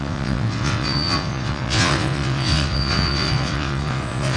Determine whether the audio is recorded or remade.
remade